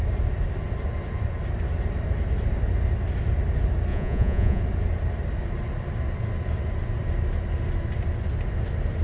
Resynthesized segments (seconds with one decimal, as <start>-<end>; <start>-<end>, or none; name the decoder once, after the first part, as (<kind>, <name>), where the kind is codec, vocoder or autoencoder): 3.9-4.6 (vocoder, Vocos)